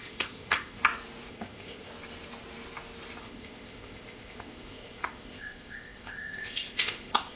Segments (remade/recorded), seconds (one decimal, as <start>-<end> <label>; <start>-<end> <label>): 0.0-0.8 remade; 0.8-1.3 recorded; 1.3-1.9 remade; 1.9-3.2 recorded; 3.2-7.4 remade

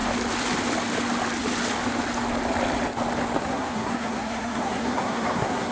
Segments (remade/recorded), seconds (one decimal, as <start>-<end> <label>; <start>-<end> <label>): 0.0-3.4 recorded; 3.4-5.7 remade

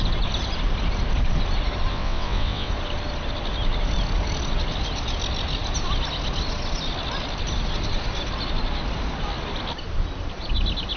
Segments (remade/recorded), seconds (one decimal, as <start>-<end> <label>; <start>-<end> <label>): 0.0-1.9 recorded; 1.9-2.7 remade; 2.7-11.0 recorded